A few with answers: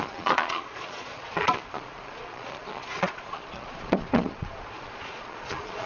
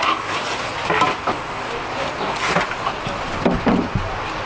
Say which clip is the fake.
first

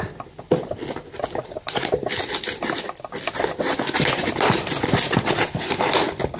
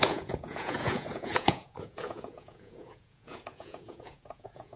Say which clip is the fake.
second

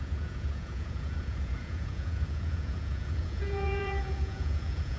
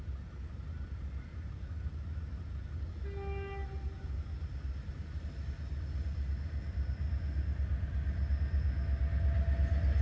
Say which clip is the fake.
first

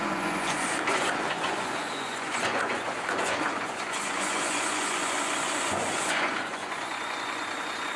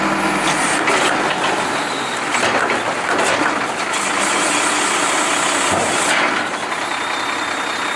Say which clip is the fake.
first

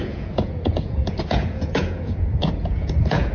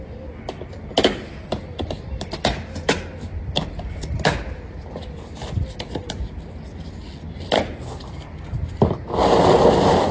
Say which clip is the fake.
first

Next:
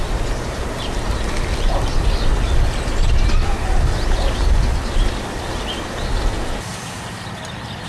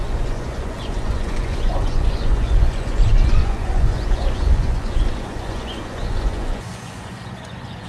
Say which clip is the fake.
second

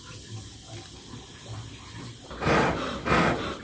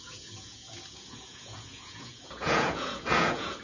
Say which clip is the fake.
second